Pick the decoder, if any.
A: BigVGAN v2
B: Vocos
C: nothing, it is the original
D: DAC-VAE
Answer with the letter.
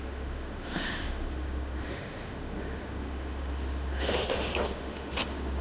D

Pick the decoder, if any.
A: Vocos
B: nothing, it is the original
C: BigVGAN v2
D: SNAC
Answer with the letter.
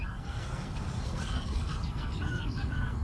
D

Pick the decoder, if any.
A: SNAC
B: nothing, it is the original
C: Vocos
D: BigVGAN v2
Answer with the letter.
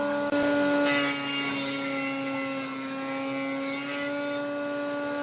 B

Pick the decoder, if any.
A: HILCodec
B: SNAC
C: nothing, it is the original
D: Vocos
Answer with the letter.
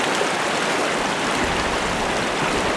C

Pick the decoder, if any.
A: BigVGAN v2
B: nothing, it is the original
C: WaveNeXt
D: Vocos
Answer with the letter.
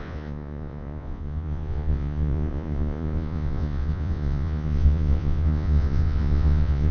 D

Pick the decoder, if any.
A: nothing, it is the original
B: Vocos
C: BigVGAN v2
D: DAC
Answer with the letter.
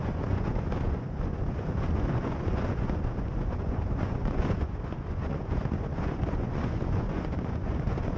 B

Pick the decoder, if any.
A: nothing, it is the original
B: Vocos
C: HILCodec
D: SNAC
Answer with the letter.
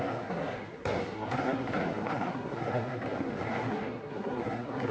D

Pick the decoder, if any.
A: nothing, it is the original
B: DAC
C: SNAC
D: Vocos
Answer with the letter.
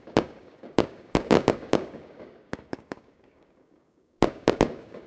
B